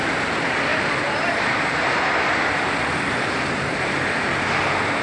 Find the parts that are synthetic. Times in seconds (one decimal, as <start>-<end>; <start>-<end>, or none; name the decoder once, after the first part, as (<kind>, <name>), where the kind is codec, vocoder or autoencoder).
0.7-3.7 (vocoder, BigVGAN v2)